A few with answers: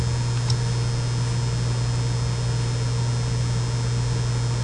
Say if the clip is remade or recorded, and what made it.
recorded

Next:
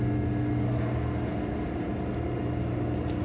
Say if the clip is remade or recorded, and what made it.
recorded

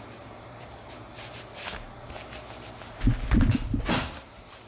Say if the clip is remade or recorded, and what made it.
recorded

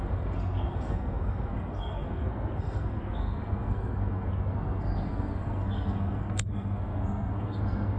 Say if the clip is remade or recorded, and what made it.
remade, codec, SNAC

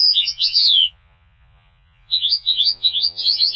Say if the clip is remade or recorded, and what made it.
remade, vocoder, Vocos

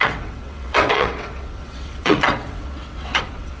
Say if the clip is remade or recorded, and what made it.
remade, vocoder, WaveNeXt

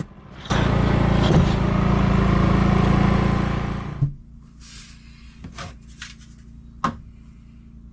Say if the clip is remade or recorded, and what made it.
recorded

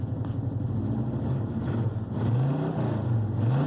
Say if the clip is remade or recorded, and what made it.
recorded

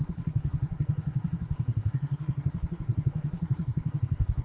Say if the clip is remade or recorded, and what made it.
remade, codec, SNAC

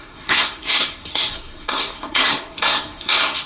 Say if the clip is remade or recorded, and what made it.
remade, codec, SNAC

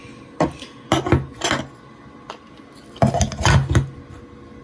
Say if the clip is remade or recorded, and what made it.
recorded